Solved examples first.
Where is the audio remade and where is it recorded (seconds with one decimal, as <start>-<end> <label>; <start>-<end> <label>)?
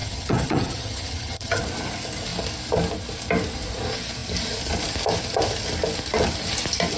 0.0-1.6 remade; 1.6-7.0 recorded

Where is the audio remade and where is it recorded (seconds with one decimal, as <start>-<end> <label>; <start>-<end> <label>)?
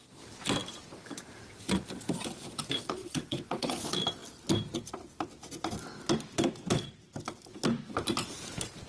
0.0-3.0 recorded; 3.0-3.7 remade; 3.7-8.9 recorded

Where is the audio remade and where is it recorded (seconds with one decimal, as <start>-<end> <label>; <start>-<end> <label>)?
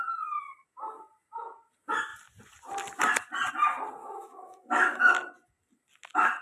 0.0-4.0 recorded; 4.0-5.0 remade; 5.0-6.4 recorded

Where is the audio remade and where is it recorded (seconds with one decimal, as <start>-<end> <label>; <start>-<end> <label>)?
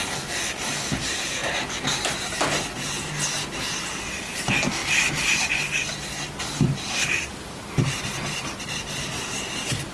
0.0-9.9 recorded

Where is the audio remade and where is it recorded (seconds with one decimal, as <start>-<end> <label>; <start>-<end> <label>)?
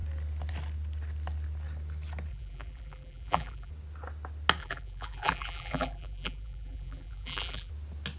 0.0-2.3 recorded; 2.3-3.7 remade; 3.7-4.6 recorded; 4.6-7.7 remade; 7.7-8.2 recorded